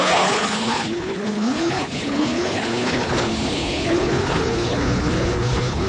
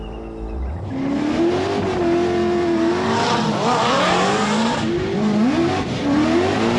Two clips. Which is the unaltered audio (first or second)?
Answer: second